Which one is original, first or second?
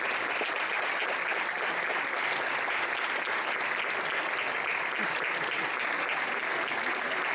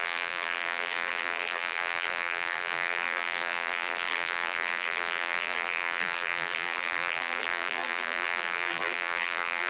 first